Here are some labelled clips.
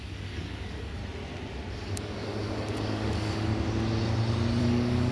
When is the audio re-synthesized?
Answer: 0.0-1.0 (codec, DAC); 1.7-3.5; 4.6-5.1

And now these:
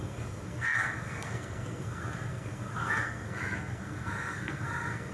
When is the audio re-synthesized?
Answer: 0.0-5.1 (codec, SNAC)

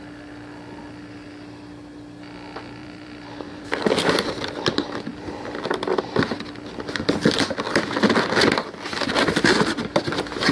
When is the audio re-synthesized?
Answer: 2.8-4.2 (vocoder, BigVGAN v2)

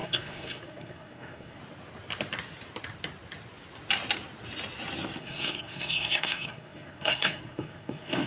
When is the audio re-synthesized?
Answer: 0.0-1.6 (codec, SNAC); 5.2-8.3

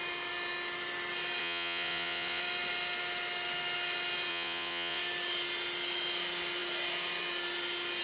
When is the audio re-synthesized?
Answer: 1.4-2.4 (vocoder, Vocos); 4.3-5.0

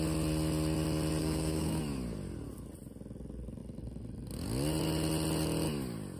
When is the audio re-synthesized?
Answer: 1.2-1.8 (codec, SNAC)

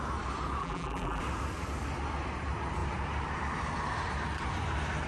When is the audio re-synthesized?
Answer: 0.6-1.2 (vocoder, BigVGAN v2)